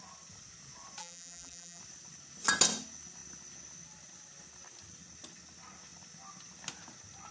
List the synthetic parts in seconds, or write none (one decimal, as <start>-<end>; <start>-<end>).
1.0-1.8